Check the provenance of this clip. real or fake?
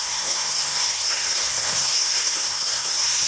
fake